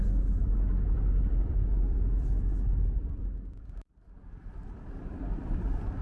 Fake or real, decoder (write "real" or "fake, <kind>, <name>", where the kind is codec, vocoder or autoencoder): fake, vocoder, BigVGAN v2